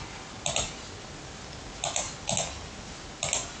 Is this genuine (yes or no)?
yes